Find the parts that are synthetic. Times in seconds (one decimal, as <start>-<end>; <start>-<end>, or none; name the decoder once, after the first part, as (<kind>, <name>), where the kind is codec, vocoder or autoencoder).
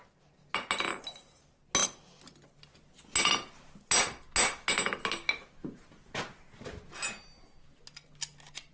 none